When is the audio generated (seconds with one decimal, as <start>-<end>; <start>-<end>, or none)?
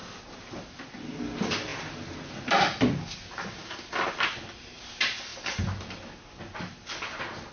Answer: none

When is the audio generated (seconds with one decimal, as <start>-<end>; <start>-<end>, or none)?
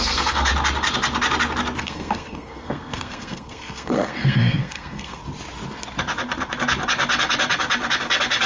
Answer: 0.0-0.5; 1.8-5.2